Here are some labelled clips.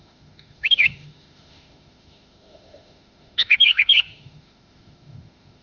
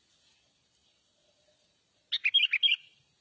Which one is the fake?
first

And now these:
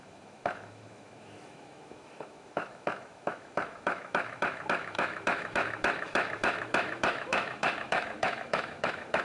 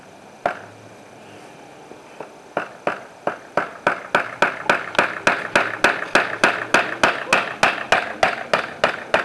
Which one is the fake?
first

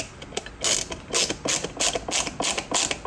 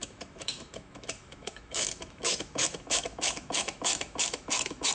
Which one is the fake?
second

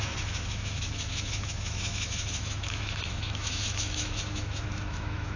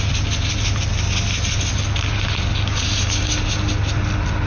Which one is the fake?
first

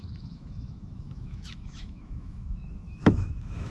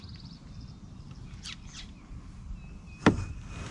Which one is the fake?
first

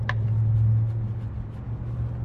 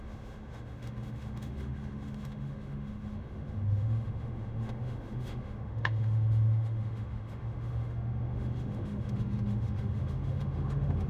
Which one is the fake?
second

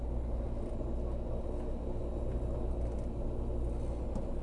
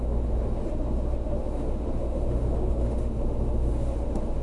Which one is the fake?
second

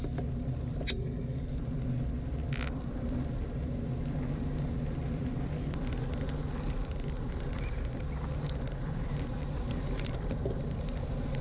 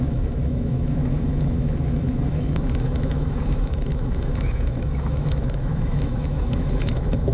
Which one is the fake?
second